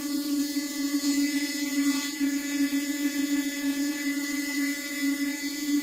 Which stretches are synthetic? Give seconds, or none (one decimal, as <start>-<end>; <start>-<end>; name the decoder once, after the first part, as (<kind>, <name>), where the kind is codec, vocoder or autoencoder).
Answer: 0.0-5.8 (vocoder, Vocos)